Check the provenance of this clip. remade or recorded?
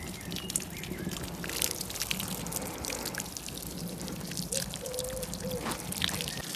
recorded